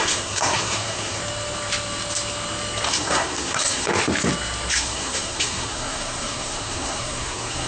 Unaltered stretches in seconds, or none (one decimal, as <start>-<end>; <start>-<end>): 1.2-2.9; 3.9-4.7